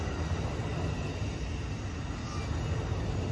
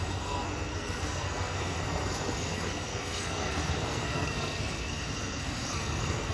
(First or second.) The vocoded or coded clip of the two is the second